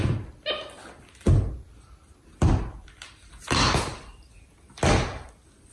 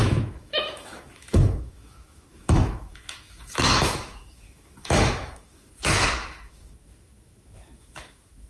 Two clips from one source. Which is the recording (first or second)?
first